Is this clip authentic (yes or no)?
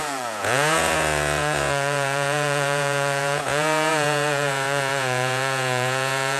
no